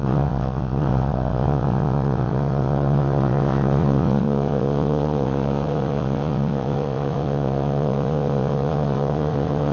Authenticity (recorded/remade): remade